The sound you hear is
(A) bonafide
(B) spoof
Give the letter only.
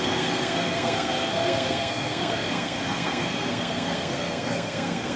B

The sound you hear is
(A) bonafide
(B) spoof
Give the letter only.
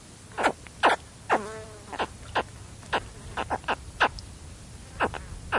A